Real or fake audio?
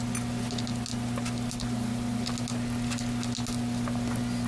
real